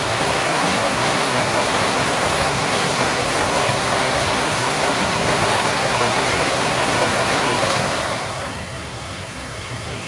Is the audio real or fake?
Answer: fake